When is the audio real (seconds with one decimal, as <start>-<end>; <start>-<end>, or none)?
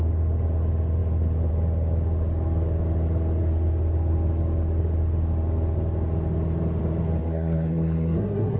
0.0-7.2